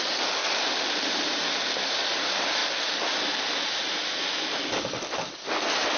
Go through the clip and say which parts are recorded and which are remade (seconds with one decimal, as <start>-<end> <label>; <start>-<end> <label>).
0.0-6.0 recorded